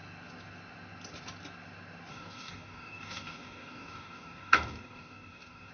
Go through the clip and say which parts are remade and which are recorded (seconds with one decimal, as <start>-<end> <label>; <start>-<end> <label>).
0.0-2.1 recorded; 2.1-5.7 remade